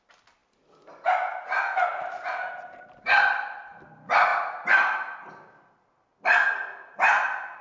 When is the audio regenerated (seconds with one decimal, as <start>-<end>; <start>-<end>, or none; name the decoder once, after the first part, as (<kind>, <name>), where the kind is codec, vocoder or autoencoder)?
none